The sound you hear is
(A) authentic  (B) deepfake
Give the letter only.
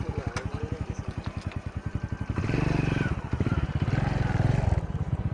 A